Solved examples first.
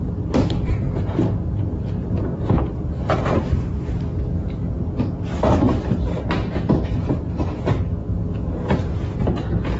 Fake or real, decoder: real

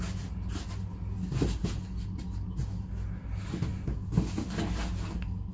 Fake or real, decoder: real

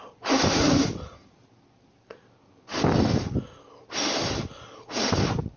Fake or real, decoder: real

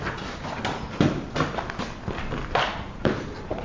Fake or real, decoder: real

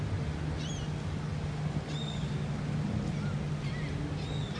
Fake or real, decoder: real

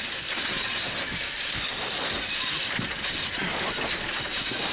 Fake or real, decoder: real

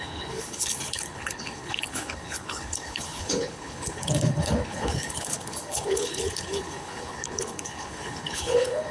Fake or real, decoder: fake, codec, HILCodec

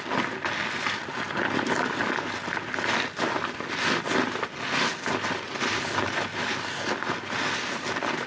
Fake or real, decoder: real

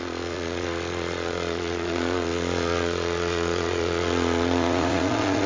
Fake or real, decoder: fake, vocoder, Vocos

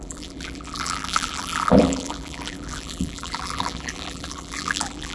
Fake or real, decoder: fake, vocoder, BigVGAN v2